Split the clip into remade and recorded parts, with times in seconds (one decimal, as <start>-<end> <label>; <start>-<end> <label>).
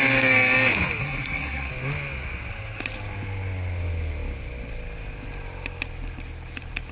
0.0-1.0 recorded; 1.0-1.7 remade; 1.7-6.9 recorded